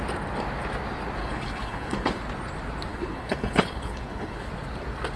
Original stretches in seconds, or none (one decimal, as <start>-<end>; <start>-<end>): 0.0-1.2; 2.2-2.9; 4.5-5.2